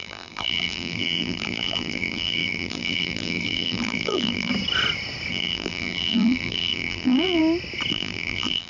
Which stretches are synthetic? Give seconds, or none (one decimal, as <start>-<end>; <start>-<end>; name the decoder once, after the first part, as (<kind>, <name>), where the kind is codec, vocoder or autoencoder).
0.0-4.5 (vocoder, BigVGAN v2); 5.3-7.4; 7.9-8.7